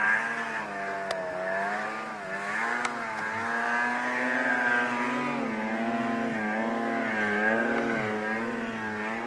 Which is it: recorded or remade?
recorded